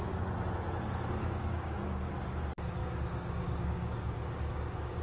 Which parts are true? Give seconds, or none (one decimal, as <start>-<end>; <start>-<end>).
0.0-1.2; 2.1-2.8